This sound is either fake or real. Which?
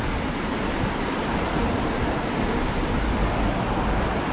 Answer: fake